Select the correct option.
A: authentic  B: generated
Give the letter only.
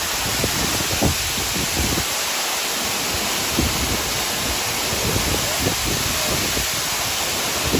A